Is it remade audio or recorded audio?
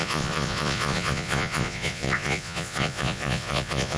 remade